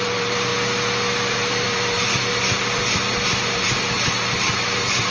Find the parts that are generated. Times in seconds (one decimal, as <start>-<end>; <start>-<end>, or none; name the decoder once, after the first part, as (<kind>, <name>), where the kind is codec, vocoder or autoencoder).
0.0-0.5 (vocoder, BigVGAN v2); 1.3-5.1